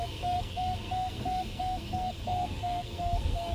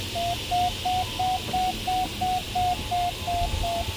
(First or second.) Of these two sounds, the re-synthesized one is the first